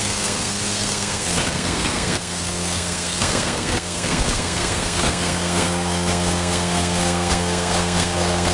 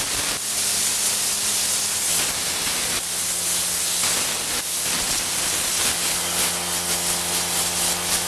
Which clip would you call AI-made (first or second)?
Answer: first